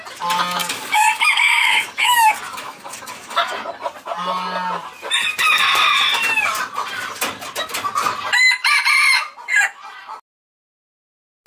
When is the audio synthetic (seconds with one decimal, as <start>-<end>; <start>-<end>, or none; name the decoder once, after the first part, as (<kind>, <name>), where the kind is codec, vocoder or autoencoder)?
0.6-3.5 (codec, DAC)